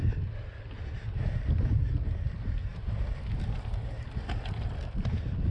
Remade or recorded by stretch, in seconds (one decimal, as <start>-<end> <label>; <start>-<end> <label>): 0.0-5.5 recorded